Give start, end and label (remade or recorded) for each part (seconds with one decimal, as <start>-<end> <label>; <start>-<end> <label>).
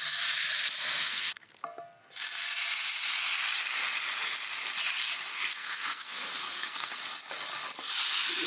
0.0-1.0 recorded; 1.0-1.5 remade; 1.5-5.3 recorded; 5.3-7.0 remade; 7.0-8.5 recorded